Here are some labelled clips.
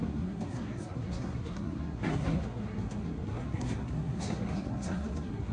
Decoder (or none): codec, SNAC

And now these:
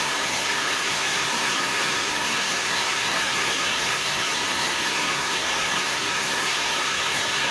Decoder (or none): codec, SNAC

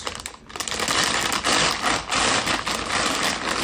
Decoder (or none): none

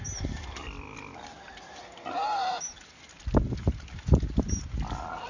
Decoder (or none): none